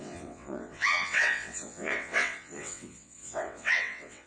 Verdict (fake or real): fake